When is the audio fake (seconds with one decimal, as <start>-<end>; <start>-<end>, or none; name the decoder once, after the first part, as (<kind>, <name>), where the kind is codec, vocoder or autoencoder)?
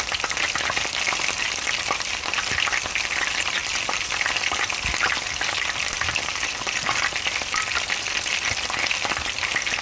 none